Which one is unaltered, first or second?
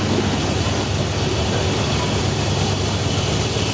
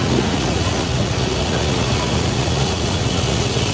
first